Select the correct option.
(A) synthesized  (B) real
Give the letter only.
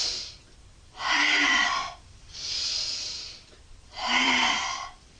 A